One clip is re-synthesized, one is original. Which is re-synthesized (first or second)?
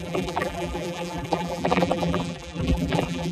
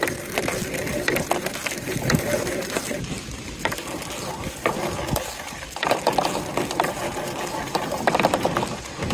first